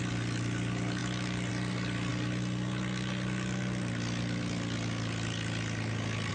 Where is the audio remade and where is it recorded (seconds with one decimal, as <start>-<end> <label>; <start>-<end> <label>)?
0.0-6.3 recorded